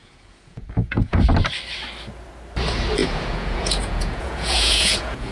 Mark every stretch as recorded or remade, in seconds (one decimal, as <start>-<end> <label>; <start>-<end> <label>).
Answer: 0.0-1.2 remade; 1.2-3.0 recorded; 3.0-5.3 remade